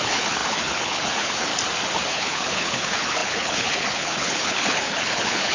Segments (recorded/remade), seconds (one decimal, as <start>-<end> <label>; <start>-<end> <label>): 0.0-1.5 remade; 1.5-2.1 recorded; 2.1-5.5 remade